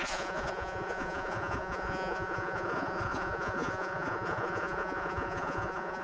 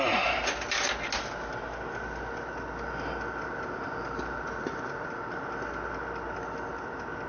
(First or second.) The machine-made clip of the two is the first